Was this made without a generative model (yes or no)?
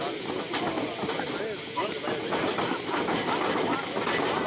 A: yes